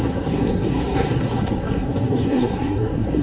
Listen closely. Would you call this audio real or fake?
fake